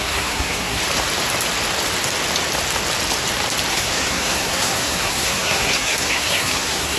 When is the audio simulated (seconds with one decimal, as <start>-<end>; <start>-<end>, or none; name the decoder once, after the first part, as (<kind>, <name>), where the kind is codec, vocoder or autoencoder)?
0.0-0.8 (codec, SNAC); 3.7-7.0